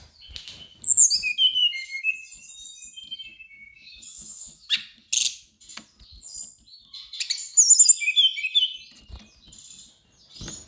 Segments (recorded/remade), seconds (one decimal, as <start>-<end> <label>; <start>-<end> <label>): 0.0-1.6 recorded; 1.6-2.1 remade; 2.1-3.3 recorded; 3.3-4.8 remade; 4.8-10.7 recorded